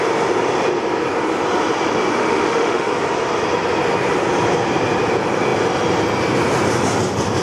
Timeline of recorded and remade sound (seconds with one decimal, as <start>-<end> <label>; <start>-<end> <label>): 0.0-2.2 recorded; 2.2-2.9 remade; 2.9-7.4 recorded

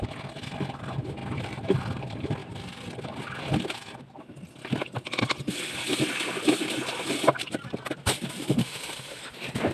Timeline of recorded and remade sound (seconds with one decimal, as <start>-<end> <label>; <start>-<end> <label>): 0.0-8.6 recorded; 8.6-9.2 remade; 9.2-9.7 recorded

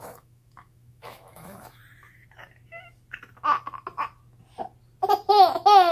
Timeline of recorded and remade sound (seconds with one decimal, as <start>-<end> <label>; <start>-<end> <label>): 0.0-1.8 remade; 1.8-5.3 recorded; 5.3-5.9 remade

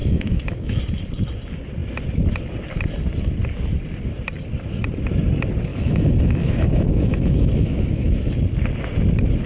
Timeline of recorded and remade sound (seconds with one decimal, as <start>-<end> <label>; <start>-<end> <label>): 0.0-0.8 remade; 0.8-5.7 recorded; 5.7-8.3 remade; 8.3-9.5 recorded

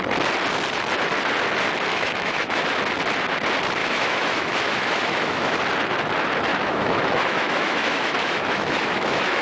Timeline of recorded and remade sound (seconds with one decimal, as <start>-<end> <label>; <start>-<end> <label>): 0.0-1.9 recorded; 1.9-2.6 remade; 2.6-3.8 recorded; 3.8-5.6 remade; 5.6-6.5 recorded; 6.5-9.4 remade

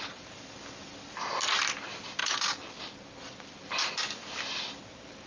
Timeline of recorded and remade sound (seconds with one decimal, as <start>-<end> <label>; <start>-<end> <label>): 0.0-5.3 recorded